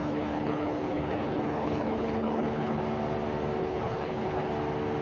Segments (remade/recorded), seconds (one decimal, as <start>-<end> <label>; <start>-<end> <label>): 0.0-2.8 remade; 2.8-3.6 recorded; 3.6-4.5 remade; 4.5-5.0 recorded